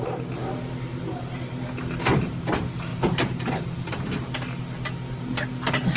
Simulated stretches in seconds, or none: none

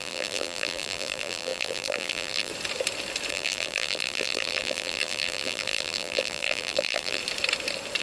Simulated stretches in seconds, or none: 0.0-2.5 (vocoder, BigVGAN v2); 3.3-7.2